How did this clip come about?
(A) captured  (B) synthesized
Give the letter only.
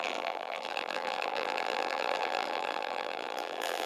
B